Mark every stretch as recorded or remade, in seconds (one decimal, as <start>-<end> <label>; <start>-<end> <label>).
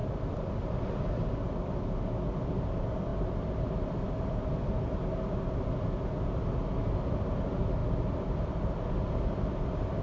0.0-0.8 remade; 0.8-3.1 recorded; 3.1-3.9 remade; 3.9-7.8 recorded; 7.8-8.7 remade; 8.7-10.0 recorded